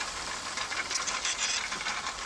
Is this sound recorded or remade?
recorded